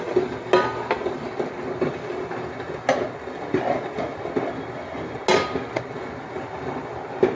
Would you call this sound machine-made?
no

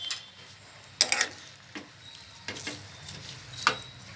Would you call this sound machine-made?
no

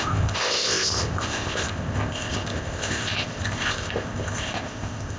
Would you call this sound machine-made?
yes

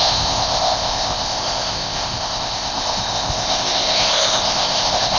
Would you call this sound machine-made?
yes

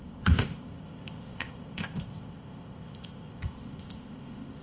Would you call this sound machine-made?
yes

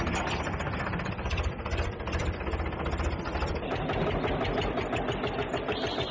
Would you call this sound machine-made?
no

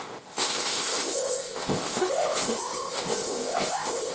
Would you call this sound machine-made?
yes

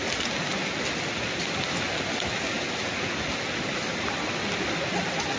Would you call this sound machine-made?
no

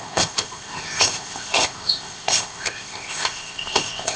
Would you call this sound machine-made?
yes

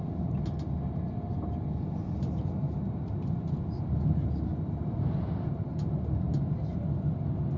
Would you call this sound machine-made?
no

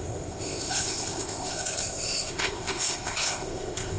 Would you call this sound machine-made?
yes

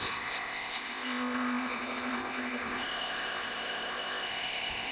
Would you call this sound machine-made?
yes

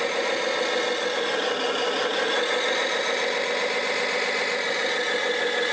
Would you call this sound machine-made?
no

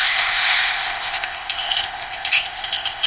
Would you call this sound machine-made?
yes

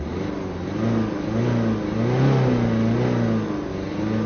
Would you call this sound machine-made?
no